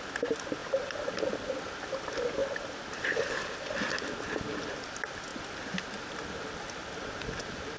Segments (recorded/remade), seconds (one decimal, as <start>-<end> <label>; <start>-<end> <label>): 0.0-0.6 recorded; 0.6-1.9 remade; 1.9-2.4 recorded; 2.4-4.8 remade; 4.8-5.3 recorded; 5.3-7.8 remade